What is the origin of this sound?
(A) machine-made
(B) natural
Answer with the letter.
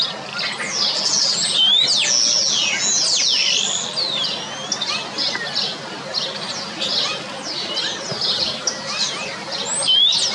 B